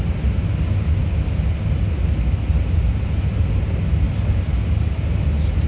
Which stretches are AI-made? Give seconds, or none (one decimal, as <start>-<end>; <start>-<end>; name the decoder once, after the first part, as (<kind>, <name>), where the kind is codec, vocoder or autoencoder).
none